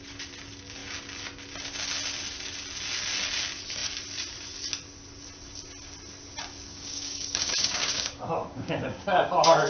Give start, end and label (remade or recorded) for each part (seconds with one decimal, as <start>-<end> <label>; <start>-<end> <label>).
0.0-6.7 recorded; 6.7-9.7 remade